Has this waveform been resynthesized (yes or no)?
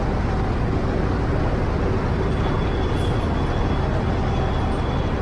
no